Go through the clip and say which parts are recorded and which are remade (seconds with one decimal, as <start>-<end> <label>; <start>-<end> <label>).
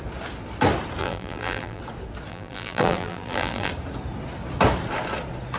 0.0-1.0 recorded; 1.0-1.8 remade; 1.8-2.3 recorded; 2.3-3.7 remade; 3.7-5.6 recorded